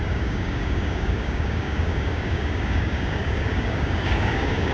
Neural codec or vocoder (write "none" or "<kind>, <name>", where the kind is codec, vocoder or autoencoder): codec, DAC